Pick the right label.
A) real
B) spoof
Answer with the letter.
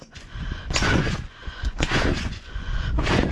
B